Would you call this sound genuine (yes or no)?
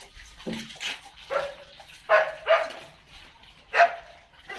yes